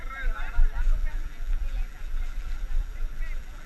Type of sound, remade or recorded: remade